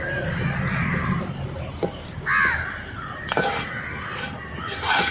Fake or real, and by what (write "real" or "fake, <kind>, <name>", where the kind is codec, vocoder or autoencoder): real